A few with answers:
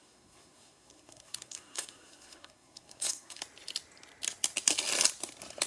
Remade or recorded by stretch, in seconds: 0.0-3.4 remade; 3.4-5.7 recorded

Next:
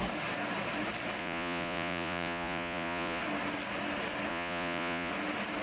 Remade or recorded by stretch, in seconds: 0.0-1.2 recorded; 1.2-3.2 remade; 3.2-4.3 recorded; 4.3-5.1 remade; 5.1-5.6 recorded